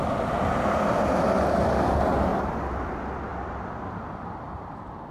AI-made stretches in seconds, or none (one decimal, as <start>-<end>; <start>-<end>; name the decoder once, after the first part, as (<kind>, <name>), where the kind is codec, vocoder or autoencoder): 2.3-2.9 (vocoder, BigVGAN v2); 3.3-5.1